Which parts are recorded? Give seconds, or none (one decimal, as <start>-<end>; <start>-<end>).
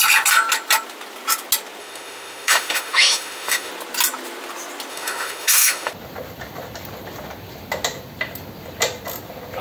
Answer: 0.0-1.8; 3.7-4.9; 5.9-9.6